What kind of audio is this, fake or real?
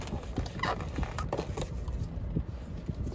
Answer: real